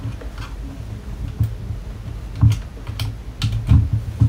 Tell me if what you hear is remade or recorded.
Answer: recorded